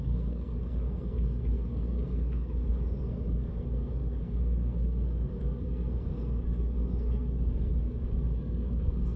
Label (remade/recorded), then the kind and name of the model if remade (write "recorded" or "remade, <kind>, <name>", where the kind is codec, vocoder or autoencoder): remade, codec, SNAC